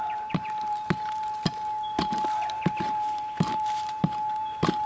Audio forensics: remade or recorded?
recorded